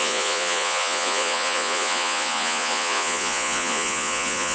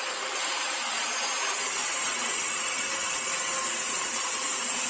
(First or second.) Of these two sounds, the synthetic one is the first